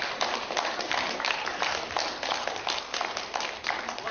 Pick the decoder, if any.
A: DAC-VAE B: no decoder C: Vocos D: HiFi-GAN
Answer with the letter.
B